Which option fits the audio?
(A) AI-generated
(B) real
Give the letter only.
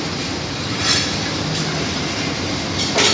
A